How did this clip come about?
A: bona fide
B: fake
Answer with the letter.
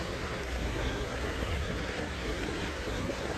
B